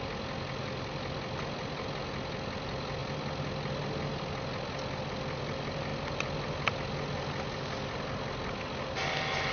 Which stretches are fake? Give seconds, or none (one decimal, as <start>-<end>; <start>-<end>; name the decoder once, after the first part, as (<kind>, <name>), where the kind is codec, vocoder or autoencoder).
none